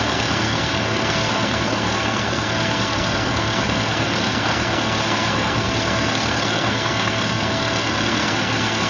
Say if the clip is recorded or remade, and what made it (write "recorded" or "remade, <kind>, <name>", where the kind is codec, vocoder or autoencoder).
remade, codec, SNAC